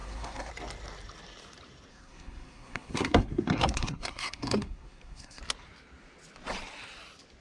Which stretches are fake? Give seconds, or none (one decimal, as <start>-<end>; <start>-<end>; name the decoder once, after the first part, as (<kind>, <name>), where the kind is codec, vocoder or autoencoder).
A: 0.0-0.5 (codec, SNAC); 1.9-5.4

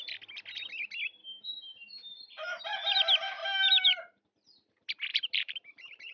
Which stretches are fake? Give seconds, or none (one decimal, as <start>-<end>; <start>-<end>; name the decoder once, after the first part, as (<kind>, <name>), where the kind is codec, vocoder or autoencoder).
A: 1.2-2.6 (vocoder, BigVGAN v2); 3.4-4.2; 5.1-6.1

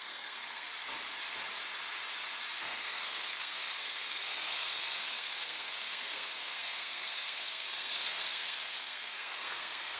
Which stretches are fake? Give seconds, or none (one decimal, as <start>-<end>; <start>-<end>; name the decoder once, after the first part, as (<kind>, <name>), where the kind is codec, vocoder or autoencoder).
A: 0.0-0.7 (codec, SNAC); 2.6-10.0

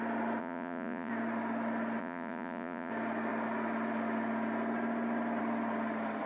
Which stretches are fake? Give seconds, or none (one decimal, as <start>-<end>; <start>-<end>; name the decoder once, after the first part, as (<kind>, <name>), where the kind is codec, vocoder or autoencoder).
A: 0.4-1.1 (vocoder, Vocos); 2.0-2.9

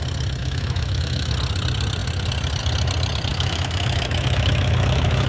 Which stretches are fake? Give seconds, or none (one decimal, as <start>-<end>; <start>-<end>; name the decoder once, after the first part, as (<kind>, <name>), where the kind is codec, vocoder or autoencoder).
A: 0.4-1.3 (autoencoder, DAC-VAE); 3.3-5.3